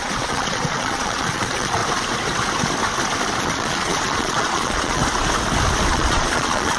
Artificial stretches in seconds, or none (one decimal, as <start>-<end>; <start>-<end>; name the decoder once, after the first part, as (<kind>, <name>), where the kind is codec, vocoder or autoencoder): 0.0-1.8 (vocoder, Vocos); 3.4-5.0; 5.9-6.8